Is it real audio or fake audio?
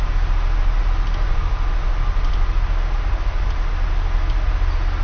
real